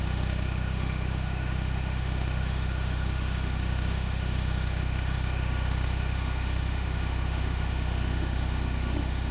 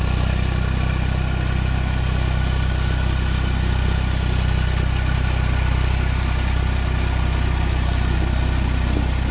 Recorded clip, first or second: second